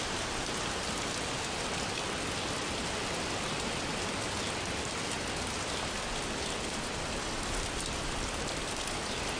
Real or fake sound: real